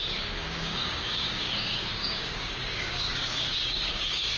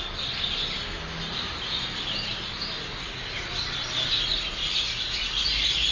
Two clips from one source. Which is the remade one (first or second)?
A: first